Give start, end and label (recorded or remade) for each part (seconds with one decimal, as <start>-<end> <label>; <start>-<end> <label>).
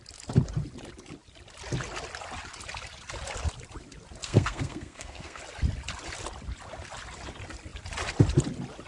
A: 0.0-4.2 recorded; 4.2-5.4 remade; 5.4-8.9 recorded